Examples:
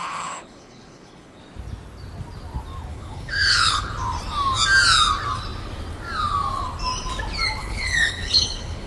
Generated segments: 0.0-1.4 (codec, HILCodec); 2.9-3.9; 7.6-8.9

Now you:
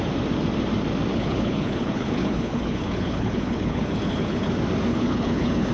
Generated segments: 1.1-4.5 (codec, HILCodec); 4.9-5.7

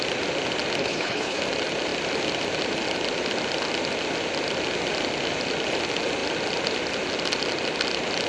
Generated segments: 0.8-1.4 (codec, HILCodec)

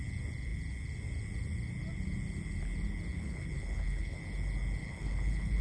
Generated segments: 3.1-4.2 (codec, HILCodec); 4.8-5.6

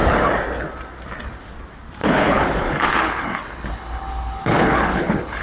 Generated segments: 2.0-5.4 (codec, HILCodec)

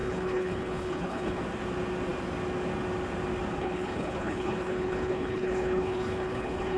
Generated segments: 0.0-1.4 (codec, HILCodec); 3.5-6.8